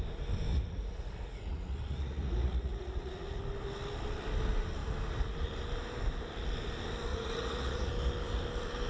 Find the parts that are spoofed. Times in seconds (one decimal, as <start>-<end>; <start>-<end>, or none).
0.5-3.4; 7.1-7.9